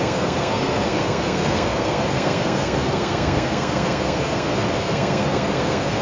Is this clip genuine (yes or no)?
no